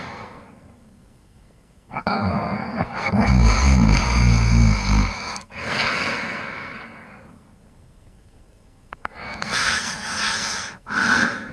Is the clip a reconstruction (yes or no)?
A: yes